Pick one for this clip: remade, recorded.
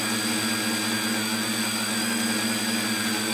recorded